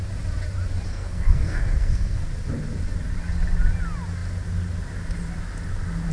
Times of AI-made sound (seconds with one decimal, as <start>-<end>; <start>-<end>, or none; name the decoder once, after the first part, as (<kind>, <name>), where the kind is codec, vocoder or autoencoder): 0.9-2.3 (codec, SNAC)